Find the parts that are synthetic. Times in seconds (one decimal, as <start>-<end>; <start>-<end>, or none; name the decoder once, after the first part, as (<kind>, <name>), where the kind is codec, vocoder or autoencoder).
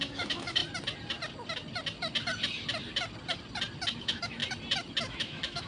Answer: 0.0-0.6 (autoencoder, DAC-VAE); 4.0-4.4; 5.0-5.7